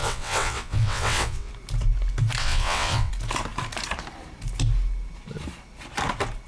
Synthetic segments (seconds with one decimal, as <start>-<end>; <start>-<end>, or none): 0.0-1.5; 2.4-3.1